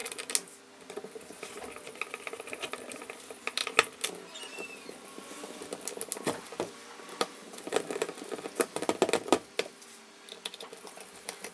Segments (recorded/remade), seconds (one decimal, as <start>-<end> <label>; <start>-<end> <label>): 0.0-11.5 recorded